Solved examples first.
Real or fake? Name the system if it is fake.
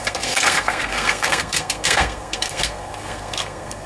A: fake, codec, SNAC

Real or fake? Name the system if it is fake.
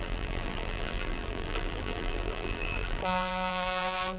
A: fake, vocoder, BigVGAN v2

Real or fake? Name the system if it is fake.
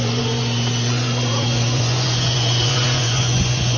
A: fake, vocoder, Vocos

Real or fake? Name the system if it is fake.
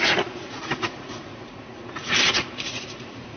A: fake, vocoder, Vocos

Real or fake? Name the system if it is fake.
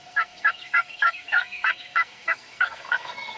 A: fake, codec, SNAC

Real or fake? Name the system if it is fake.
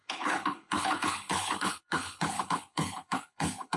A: fake, codec, HILCodec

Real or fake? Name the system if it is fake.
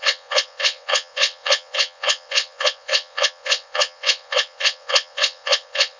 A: fake, vocoder, WaveNeXt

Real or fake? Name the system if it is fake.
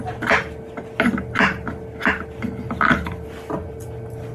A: real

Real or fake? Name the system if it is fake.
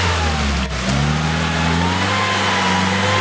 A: real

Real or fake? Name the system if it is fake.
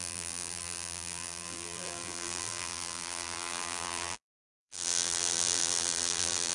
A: fake, vocoder, BigVGAN v2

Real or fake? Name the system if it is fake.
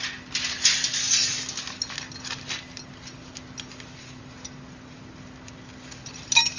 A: real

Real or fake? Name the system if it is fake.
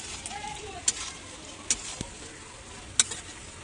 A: real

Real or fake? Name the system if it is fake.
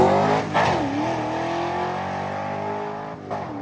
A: real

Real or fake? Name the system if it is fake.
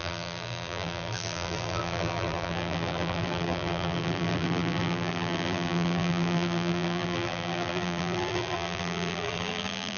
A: fake, vocoder, BigVGAN v2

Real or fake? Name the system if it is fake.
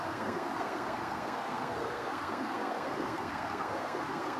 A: fake, codec, SNAC